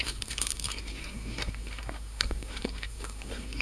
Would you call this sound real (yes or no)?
no